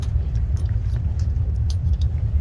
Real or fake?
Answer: fake